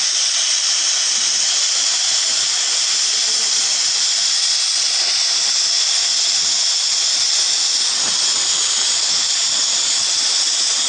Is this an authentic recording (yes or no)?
yes